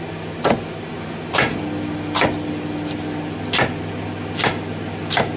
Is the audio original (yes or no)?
yes